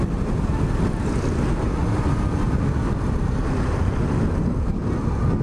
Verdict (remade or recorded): recorded